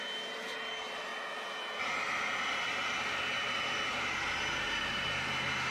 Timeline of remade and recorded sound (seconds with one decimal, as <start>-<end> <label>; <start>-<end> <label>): 0.0-5.7 recorded